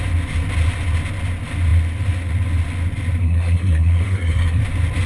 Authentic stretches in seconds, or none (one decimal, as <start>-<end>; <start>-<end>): 0.0-3.2; 4.6-5.1